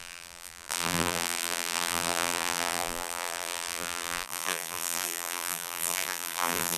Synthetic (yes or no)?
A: yes